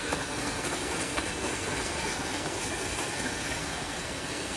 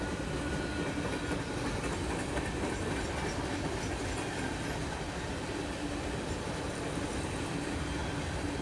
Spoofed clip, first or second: first